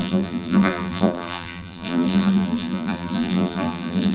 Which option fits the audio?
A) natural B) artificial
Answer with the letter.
B